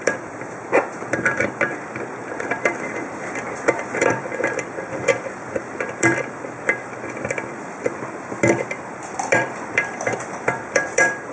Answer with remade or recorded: remade